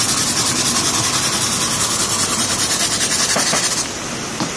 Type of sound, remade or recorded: recorded